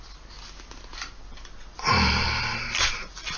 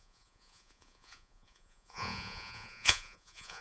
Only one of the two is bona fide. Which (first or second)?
first